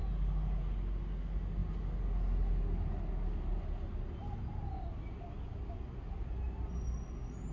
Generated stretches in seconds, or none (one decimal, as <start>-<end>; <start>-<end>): none